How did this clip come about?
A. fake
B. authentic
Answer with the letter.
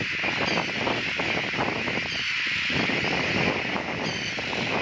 B